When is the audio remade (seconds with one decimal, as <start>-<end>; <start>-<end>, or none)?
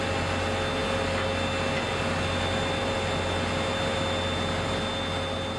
none